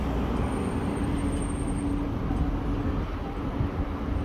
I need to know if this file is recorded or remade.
recorded